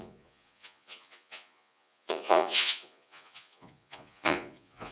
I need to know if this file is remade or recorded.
remade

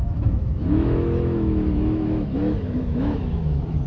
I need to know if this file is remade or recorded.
remade